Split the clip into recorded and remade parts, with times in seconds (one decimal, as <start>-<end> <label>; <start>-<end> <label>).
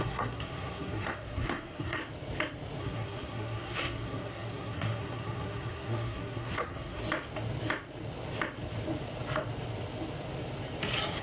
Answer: 0.0-2.0 remade; 2.0-2.8 recorded; 2.8-7.0 remade; 7.0-11.2 recorded